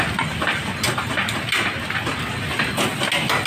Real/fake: real